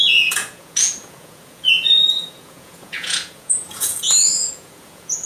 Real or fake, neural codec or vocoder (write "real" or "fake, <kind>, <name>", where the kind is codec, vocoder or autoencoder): fake, vocoder, Vocos